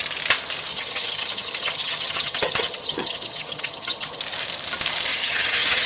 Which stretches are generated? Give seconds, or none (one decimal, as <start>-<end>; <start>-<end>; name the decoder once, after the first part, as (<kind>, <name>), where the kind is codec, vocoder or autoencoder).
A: 0.7-4.2 (vocoder, HiFi-GAN); 5.1-5.9